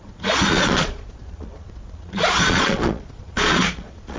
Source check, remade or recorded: remade